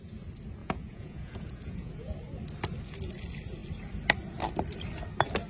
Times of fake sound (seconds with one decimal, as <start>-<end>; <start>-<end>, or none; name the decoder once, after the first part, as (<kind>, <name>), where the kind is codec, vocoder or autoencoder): 0.6-1.9 (vocoder, Vocos)

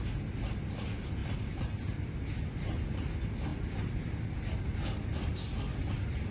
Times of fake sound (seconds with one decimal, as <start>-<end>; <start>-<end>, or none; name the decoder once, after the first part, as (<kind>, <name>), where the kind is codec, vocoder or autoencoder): none

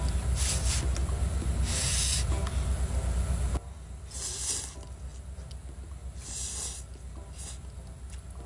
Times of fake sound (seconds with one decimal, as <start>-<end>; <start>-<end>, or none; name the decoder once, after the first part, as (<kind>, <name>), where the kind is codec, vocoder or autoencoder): none

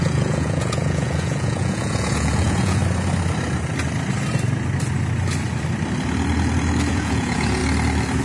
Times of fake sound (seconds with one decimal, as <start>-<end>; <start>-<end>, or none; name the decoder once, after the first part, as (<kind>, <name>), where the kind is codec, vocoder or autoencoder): 0.0-2.8 (vocoder, Vocos); 6.9-7.6

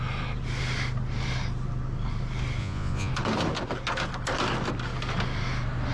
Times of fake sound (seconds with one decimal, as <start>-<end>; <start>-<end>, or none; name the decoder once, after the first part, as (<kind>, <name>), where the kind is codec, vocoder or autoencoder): 2.6-3.1 (vocoder, Vocos)

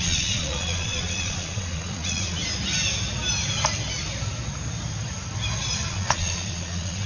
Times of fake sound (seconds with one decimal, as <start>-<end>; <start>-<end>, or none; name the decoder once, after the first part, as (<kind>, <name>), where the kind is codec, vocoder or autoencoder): 0.0-2.4 (vocoder, Vocos); 5.9-7.1

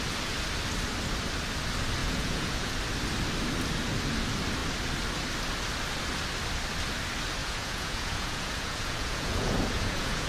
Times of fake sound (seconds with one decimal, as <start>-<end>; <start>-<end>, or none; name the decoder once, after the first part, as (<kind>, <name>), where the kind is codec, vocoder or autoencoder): 2.0-2.7 (vocoder, Vocos); 7.4-10.3